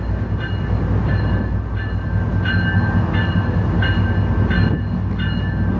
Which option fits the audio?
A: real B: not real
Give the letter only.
A